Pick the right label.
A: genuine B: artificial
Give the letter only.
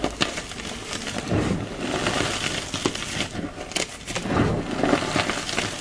A